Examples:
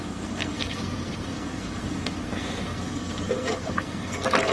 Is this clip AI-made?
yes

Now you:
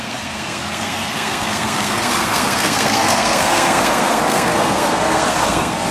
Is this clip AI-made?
yes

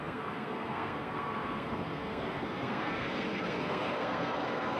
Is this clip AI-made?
yes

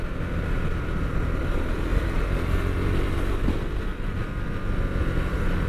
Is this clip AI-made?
no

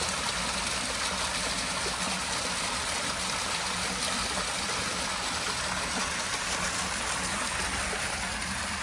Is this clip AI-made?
no